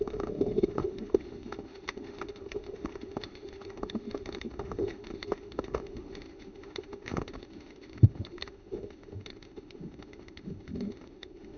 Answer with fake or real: fake